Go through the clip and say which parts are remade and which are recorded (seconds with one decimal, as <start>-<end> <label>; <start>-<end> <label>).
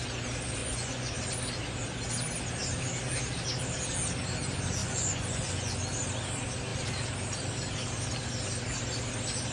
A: 0.0-0.6 recorded; 0.6-1.2 remade; 1.2-4.8 recorded; 4.8-5.8 remade; 5.8-9.5 recorded